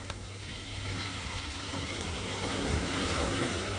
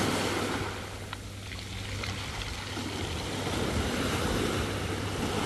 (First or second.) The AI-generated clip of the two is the first